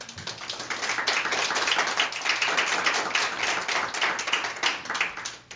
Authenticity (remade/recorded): recorded